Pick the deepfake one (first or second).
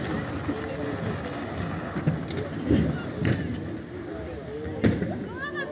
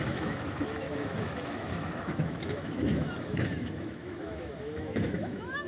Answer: second